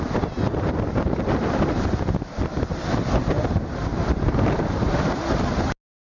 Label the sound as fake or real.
real